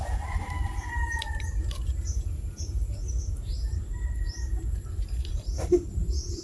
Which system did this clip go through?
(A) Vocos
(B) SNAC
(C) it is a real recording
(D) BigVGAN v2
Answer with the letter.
D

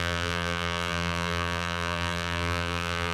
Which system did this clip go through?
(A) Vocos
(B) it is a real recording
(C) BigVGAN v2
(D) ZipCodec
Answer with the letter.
C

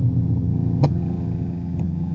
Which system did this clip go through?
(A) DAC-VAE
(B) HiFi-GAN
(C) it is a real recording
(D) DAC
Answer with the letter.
B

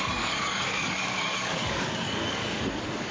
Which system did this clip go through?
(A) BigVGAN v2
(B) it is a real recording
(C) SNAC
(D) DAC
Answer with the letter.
D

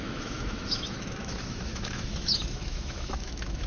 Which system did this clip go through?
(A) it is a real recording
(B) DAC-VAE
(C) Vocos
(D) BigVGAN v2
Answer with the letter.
B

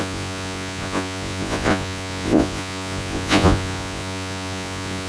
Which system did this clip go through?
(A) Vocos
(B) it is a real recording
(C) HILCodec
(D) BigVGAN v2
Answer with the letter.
A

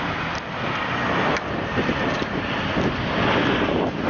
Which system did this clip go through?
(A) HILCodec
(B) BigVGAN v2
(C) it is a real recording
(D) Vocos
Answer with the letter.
C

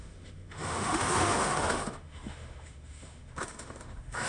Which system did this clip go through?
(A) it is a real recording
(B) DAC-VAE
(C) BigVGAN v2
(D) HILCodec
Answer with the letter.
B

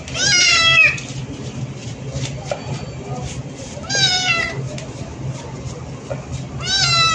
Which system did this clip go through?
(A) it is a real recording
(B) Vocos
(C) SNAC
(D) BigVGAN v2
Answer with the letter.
A